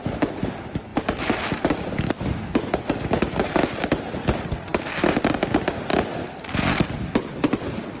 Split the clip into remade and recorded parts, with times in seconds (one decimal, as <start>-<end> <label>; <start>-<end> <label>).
0.0-8.0 recorded